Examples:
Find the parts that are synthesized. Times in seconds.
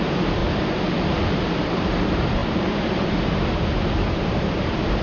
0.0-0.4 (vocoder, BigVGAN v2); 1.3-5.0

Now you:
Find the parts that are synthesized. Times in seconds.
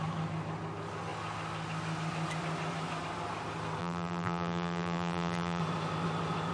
3.8-5.6 (vocoder, BigVGAN v2)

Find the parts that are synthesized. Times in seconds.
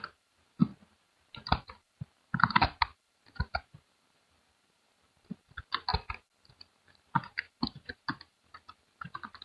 0.0-5.9 (vocoder, BigVGAN v2); 6.5-9.4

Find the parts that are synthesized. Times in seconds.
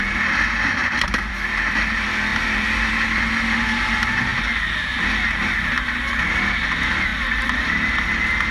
0.8-1.3 (vocoder, BigVGAN v2); 2.3-3.3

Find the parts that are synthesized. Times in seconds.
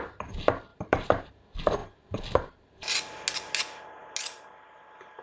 0.7-1.3 (vocoder, BigVGAN v2)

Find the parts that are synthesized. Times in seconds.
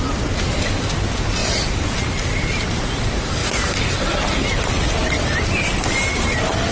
1.4-1.9 (vocoder, BigVGAN v2); 3.4-5.4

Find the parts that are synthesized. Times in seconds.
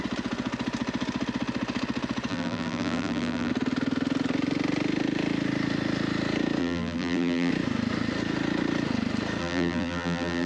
2.3-3.5 (vocoder, BigVGAN v2); 6.6-7.5; 9.4-10.5